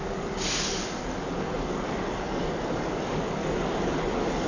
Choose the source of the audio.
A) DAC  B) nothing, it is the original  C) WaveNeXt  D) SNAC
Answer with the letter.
A